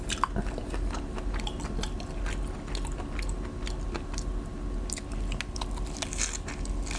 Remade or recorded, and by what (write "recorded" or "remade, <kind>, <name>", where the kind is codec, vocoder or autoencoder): recorded